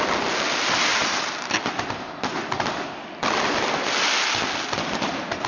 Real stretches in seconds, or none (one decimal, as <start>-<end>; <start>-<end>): 0.0-0.9; 2.1-5.5